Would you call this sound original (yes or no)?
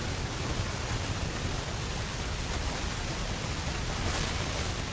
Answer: yes